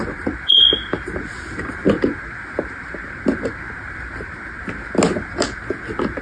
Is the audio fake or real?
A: real